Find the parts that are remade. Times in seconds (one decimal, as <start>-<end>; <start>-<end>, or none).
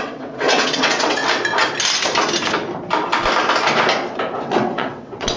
0.0-1.2; 4.4-5.4